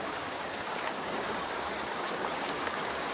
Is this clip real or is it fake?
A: fake